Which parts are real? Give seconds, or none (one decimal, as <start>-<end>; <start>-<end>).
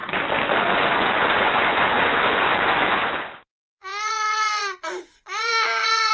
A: 0.0-0.6